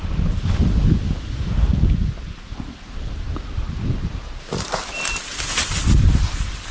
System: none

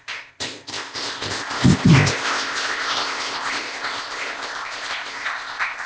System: codec, ZipCodec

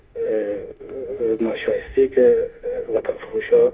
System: autoencoder, DAC-VAE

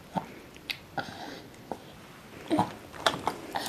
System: vocoder, BigVGAN v2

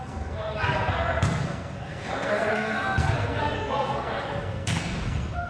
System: codec, SNAC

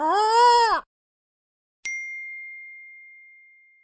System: none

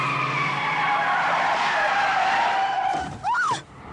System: none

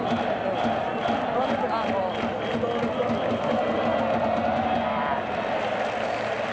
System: none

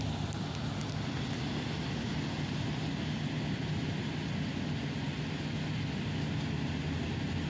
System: none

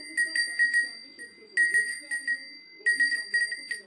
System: none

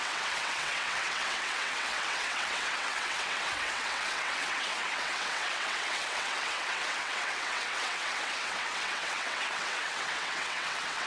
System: vocoder, WaveNeXt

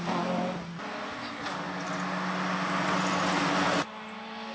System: none